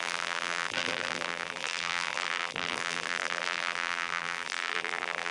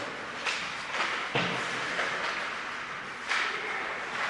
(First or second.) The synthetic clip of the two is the first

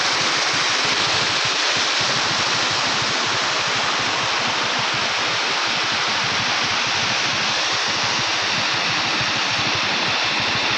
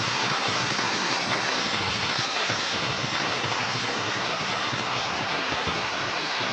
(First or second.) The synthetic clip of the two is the second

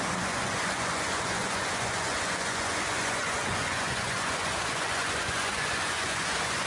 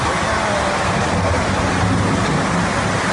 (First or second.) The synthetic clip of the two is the first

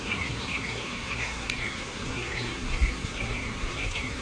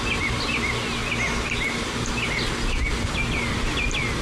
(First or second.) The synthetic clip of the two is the first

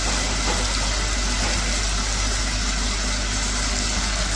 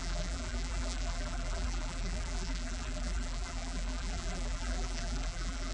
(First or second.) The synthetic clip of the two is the second